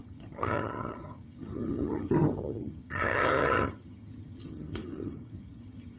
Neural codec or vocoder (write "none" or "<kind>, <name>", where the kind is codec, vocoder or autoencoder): vocoder, HiFi-GAN